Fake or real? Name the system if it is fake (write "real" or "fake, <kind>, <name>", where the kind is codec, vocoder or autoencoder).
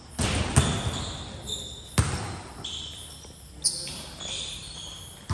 real